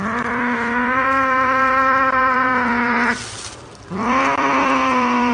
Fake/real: fake